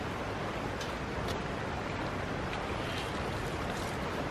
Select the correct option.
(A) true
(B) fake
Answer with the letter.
A